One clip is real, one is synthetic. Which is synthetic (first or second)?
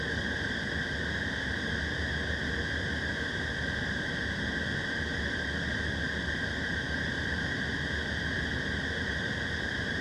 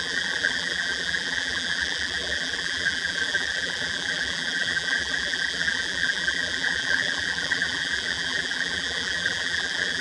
second